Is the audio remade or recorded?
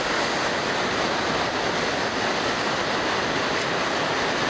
recorded